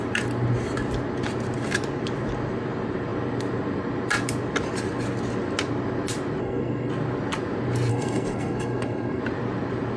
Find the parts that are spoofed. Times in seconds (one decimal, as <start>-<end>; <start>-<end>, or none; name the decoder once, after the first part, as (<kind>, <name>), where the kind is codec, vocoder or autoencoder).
6.4-6.9 (codec, SNAC); 7.9-9.2